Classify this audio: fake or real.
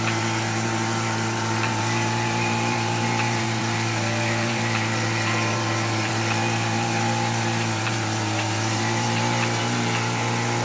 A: fake